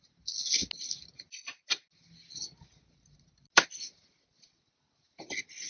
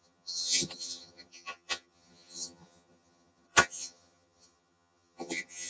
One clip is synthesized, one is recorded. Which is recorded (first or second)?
first